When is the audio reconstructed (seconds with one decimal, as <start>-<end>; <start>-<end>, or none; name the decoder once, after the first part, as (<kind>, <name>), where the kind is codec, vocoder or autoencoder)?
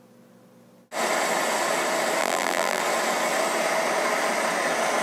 2.2-2.8 (vocoder, BigVGAN v2)